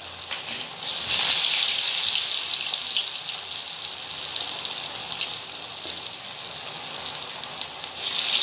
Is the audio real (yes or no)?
yes